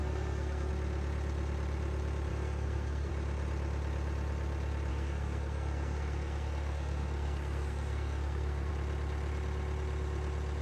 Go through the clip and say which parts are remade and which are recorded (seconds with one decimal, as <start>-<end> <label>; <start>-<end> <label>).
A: 0.0-0.7 remade; 0.7-2.3 recorded; 2.3-3.1 remade; 3.1-4.9 recorded; 4.9-8.7 remade; 8.7-10.6 recorded

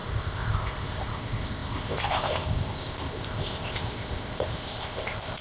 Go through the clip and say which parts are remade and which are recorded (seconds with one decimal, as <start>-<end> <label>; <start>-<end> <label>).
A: 0.0-5.4 remade

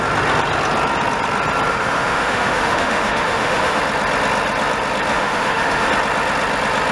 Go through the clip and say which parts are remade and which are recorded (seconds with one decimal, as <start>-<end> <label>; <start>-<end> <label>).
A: 0.0-1.7 recorded; 1.7-3.8 remade; 3.8-5.1 recorded; 5.1-5.9 remade; 5.9-6.9 recorded

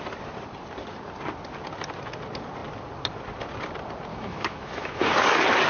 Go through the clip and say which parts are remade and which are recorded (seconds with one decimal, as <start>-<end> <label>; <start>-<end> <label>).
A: 0.0-4.1 recorded; 4.1-5.1 remade; 5.1-5.7 recorded